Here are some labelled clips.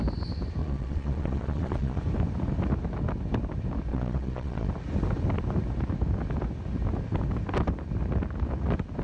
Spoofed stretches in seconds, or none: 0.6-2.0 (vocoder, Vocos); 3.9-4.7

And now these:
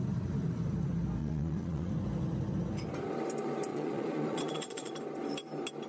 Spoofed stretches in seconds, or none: 1.2-1.9 (vocoder, Vocos); 3.7-4.9

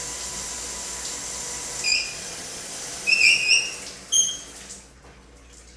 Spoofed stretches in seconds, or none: 1.9-2.7 (vocoder, Vocos)

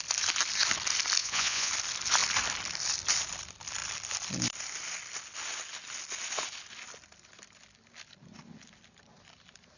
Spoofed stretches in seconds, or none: 1.2-1.7 (vocoder, Vocos)

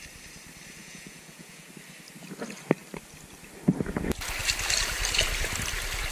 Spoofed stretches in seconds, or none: 0.8-1.7 (vocoder, Vocos)